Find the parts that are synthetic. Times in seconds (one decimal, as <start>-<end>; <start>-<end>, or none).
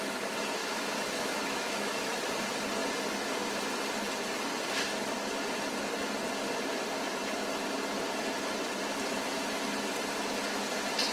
0.6-2.3